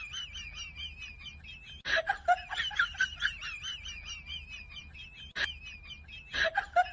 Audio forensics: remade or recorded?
recorded